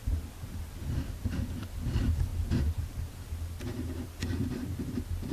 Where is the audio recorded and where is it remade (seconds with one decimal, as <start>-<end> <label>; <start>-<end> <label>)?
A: 0.0-5.3 recorded